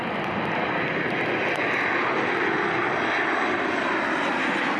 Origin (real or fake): real